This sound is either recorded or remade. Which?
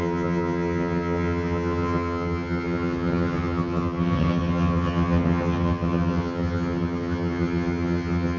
remade